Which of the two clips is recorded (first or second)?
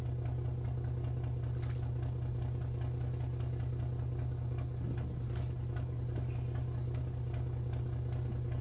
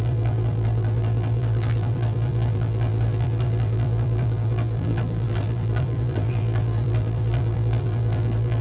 first